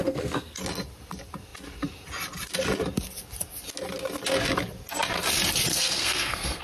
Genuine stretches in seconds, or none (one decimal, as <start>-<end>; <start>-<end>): 0.6-5.7